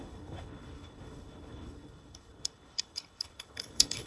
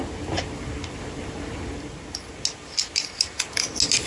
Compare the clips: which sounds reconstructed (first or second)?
first